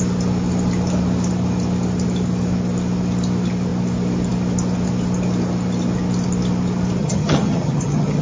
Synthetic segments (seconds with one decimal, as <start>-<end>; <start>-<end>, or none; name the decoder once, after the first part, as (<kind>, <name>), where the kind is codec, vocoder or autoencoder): 7.0-8.2 (vocoder, HiFi-GAN)